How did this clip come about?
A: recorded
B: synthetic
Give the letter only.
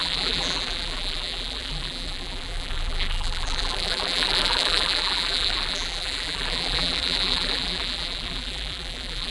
B